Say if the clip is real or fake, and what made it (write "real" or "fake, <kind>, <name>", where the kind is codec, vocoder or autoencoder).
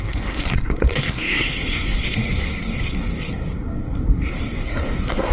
fake, codec, SNAC